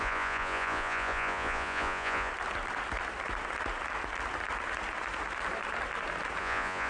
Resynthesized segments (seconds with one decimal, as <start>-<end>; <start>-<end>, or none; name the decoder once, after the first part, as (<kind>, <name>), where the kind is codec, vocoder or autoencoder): 0.0-2.3 (vocoder, Vocos); 6.4-6.9